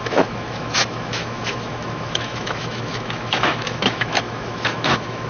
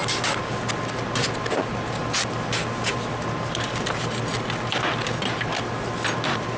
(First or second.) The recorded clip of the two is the second